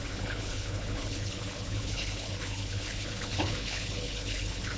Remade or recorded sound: remade